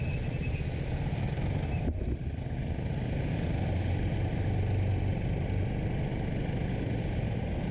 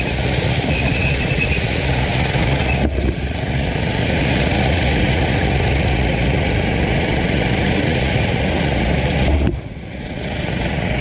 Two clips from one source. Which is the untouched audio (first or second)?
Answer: first